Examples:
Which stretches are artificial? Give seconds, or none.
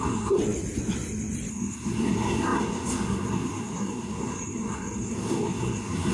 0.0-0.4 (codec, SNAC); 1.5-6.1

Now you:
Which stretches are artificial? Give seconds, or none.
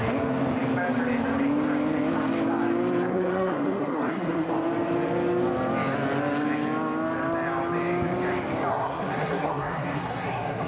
3.1-4.5 (codec, SNAC); 8.7-10.7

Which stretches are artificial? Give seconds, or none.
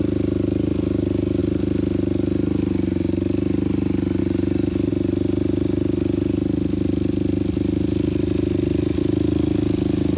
none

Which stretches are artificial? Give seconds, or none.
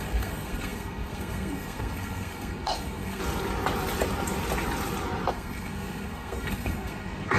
0.0-3.2 (codec, SNAC); 5.3-7.4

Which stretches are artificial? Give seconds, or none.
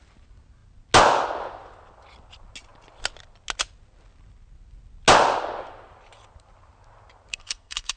7.3-8.0 (codec, SNAC)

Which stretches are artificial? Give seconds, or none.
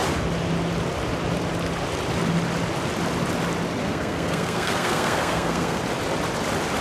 3.8-5.8 (codec, SNAC)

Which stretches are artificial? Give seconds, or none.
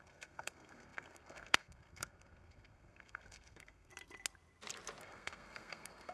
0.0-3.9 (codec, SNAC); 5.0-6.1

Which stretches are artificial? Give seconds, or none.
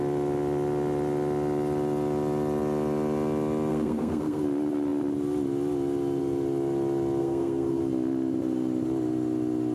3.7-4.4 (codec, SNAC); 7.2-7.8